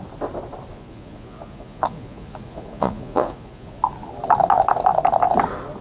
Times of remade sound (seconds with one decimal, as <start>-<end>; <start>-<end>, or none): 0.7-3.8